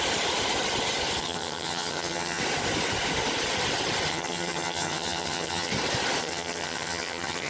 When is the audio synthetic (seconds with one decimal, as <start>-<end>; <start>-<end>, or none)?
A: 1.2-2.4; 4.1-5.7; 6.2-7.5